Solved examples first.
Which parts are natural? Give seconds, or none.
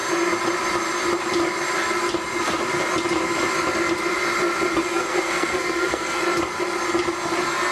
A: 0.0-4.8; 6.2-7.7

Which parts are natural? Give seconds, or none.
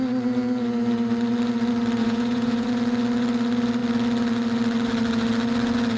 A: 0.0-2.0; 2.7-6.0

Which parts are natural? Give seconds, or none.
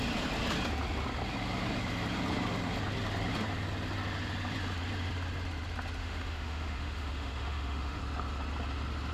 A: 0.0-6.0; 8.0-9.1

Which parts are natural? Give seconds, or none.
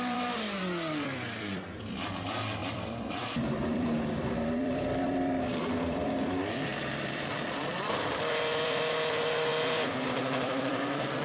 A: none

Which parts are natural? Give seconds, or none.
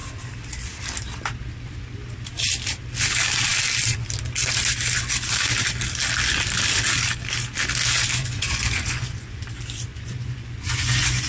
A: 0.0-8.2; 9.4-9.9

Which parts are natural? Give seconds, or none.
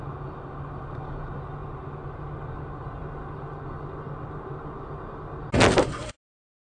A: 0.0-6.8